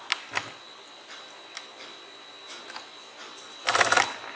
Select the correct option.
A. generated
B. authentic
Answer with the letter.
B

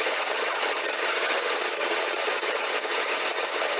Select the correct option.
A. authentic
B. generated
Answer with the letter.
B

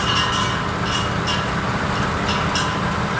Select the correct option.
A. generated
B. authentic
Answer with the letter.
B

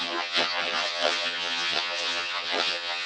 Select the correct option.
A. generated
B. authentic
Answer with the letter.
A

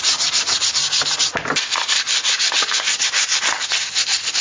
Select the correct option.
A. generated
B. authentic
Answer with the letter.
B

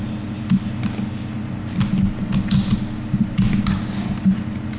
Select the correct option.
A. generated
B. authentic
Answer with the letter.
B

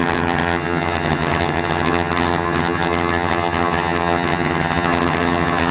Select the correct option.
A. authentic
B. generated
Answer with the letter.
B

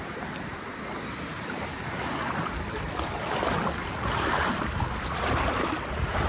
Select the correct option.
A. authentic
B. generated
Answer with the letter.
A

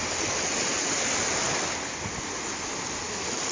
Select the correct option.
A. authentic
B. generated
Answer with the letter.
A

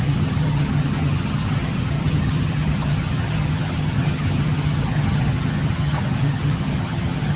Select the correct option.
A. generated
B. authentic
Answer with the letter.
A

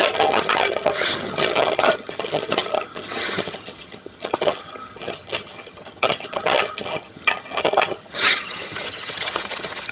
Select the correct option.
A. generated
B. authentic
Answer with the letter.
A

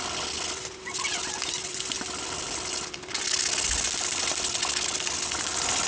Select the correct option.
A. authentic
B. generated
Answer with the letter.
A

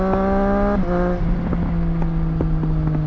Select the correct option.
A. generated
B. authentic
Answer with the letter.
B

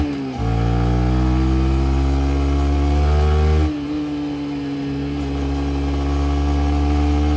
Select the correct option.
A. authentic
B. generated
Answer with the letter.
A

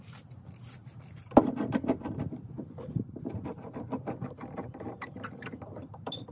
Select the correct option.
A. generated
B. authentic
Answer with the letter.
B